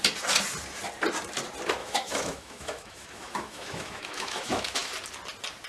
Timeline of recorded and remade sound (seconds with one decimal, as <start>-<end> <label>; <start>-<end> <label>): 0.0-1.8 recorded; 1.8-4.9 remade; 4.9-5.7 recorded